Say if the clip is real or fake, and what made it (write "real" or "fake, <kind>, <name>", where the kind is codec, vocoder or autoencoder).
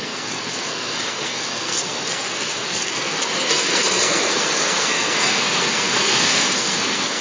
fake, codec, SNAC